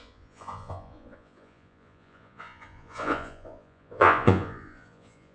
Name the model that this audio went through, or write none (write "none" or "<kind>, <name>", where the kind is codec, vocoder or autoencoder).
vocoder, Vocos